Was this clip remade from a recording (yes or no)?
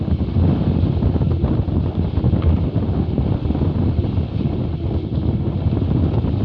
no